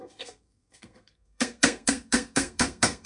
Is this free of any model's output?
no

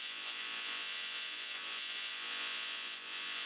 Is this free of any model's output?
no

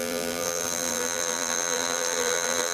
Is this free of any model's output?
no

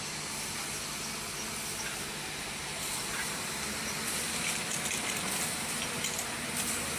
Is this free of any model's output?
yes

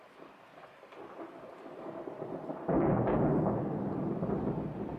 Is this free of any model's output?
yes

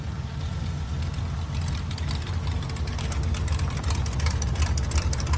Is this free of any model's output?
yes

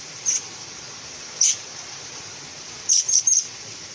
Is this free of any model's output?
no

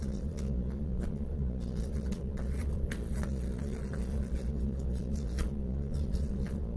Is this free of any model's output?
no